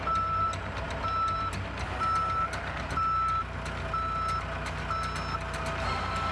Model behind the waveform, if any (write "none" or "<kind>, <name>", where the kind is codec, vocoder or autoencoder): none